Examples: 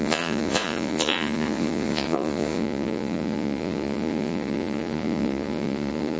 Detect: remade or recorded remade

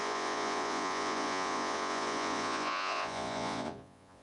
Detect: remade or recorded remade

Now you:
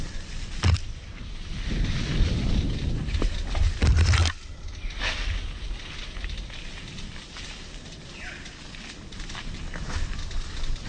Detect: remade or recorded recorded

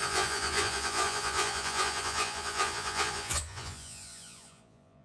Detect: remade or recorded remade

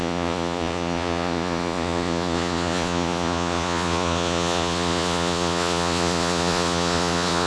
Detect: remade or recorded remade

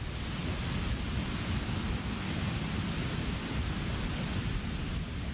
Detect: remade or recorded recorded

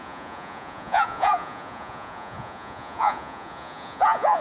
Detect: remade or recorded remade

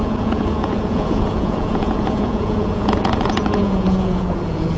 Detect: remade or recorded remade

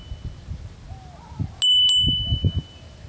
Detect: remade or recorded recorded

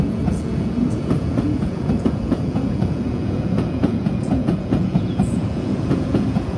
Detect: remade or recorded remade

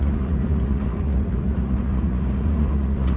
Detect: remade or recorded remade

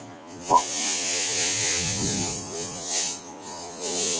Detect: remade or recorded remade